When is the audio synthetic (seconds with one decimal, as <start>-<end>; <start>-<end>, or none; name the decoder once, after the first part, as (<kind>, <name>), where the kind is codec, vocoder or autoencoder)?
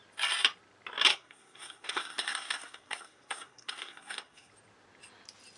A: 1.1-4.5 (codec, SNAC)